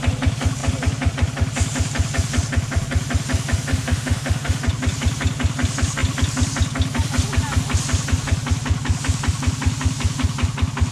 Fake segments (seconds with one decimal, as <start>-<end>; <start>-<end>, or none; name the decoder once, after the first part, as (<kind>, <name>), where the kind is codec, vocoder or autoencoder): 3.7-4.6 (autoencoder, DAC-VAE)